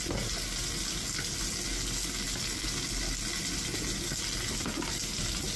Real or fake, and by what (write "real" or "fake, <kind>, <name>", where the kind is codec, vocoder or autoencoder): real